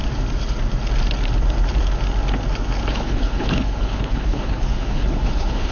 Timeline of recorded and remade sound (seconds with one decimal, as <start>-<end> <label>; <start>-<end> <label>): 0.0-2.9 recorded; 2.9-5.7 remade